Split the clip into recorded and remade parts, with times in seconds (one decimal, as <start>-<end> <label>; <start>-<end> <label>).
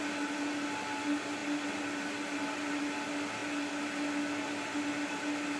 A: 0.0-5.6 recorded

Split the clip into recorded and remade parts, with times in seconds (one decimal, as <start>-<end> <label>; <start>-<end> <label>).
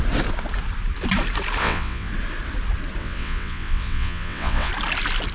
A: 0.0-1.6 recorded; 1.6-2.1 remade; 2.1-3.0 recorded; 3.0-4.7 remade; 4.7-5.3 recorded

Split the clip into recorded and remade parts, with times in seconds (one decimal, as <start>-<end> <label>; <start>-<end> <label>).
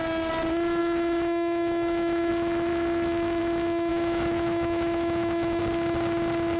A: 0.0-0.8 recorded; 0.8-2.3 remade; 2.3-3.9 recorded; 3.9-5.6 remade; 5.6-6.6 recorded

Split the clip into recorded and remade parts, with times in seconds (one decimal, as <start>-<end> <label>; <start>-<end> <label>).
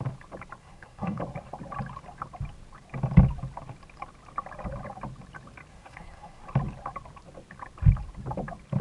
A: 0.0-0.6 recorded; 0.6-1.2 remade; 1.2-5.7 recorded; 5.7-6.4 remade; 6.4-8.8 recorded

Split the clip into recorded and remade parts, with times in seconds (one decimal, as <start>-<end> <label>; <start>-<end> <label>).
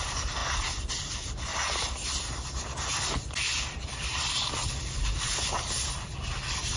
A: 0.0-1.5 remade; 1.5-3.7 recorded; 3.7-6.8 remade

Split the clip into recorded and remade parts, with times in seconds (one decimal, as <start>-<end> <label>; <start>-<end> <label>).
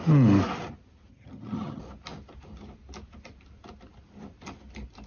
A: 0.0-1.1 recorded; 1.1-1.8 remade; 1.8-5.1 recorded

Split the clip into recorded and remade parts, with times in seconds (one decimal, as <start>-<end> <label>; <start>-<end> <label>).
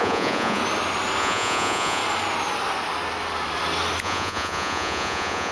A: 0.0-0.6 remade; 0.6-1.2 recorded; 1.2-2.0 remade; 2.0-4.0 recorded; 4.0-5.5 remade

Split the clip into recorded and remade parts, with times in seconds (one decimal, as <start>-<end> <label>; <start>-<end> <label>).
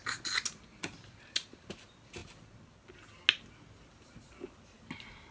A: 0.0-5.3 recorded